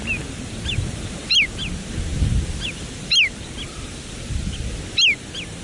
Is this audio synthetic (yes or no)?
no